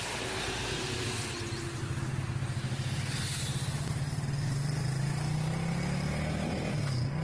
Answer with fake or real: real